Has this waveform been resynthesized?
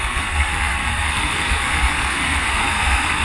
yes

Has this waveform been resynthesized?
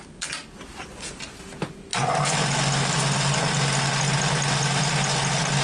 no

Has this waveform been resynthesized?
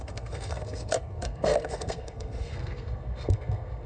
yes